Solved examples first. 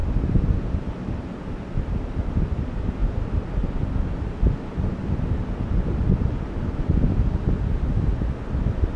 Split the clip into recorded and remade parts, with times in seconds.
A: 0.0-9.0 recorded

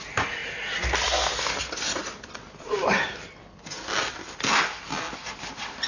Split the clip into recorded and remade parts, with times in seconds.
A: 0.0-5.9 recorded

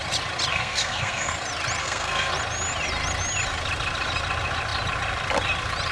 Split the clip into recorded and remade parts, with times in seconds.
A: 0.0-0.5 recorded; 0.5-1.3 remade; 1.3-1.8 recorded; 1.8-2.3 remade; 2.3-5.9 recorded